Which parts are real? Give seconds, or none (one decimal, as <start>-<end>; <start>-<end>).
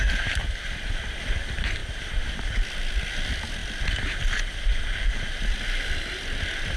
0.0-0.4; 1.2-1.8; 2.7-6.8